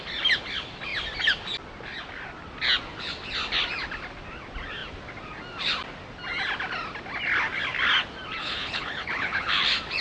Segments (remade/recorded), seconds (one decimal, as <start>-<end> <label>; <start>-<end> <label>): 0.0-8.4 recorded; 8.4-9.6 remade; 9.6-10.0 recorded